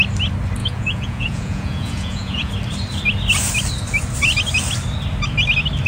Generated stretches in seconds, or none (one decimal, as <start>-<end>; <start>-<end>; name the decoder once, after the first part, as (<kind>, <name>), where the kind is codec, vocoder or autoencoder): 0.6-2.5 (vocoder, Vocos)